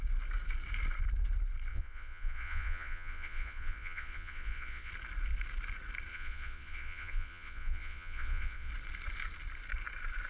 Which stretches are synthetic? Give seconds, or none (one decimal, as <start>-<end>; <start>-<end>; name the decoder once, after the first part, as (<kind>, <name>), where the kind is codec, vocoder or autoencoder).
1.7-4.9 (vocoder, Vocos); 6.1-8.7